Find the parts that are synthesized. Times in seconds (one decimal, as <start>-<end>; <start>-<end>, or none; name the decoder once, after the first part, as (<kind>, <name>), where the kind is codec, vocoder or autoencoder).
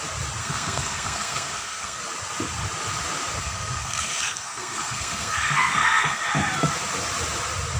0.4-2.0 (codec, SNAC); 3.4-6.2